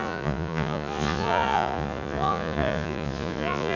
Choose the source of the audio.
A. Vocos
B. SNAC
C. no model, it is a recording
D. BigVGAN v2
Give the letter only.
A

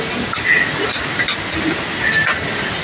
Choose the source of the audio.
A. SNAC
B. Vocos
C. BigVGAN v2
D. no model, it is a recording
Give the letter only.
D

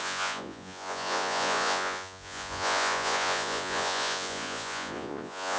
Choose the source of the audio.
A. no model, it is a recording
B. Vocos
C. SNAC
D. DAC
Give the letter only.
B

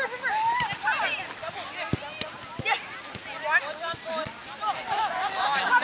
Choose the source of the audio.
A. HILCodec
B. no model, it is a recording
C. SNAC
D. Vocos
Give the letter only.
B